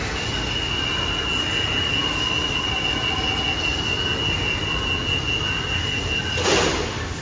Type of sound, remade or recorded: recorded